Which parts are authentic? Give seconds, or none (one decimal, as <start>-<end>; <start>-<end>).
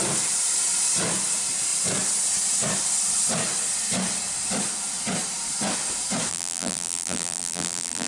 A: 0.0-6.3